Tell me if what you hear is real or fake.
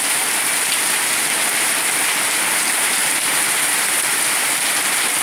fake